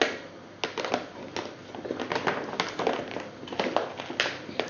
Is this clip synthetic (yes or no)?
no